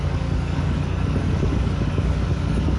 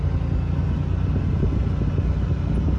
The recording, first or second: second